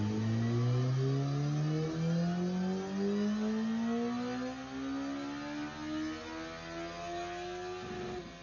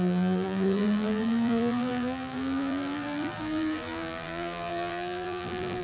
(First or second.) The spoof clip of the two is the second